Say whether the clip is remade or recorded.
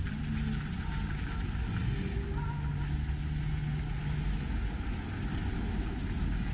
recorded